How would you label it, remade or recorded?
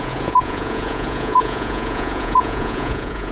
remade